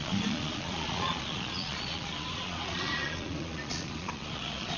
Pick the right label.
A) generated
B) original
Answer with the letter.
A